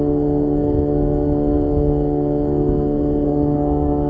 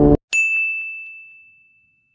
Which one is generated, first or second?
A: first